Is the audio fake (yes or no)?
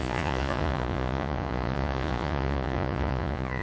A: yes